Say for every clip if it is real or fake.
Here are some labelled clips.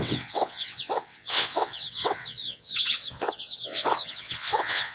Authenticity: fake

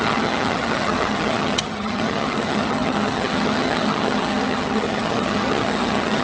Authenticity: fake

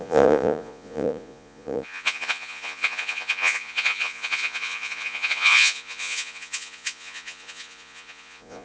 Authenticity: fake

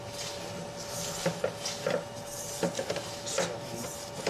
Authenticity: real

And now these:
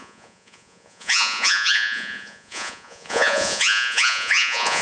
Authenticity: fake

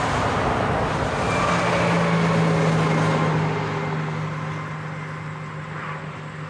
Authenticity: real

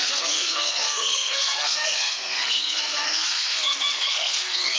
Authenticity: fake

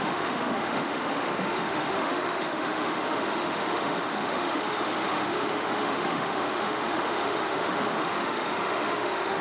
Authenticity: fake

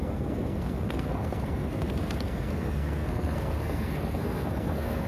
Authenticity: fake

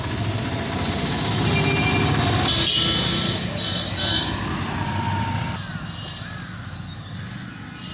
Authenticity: real